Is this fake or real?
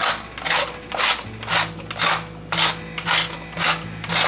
real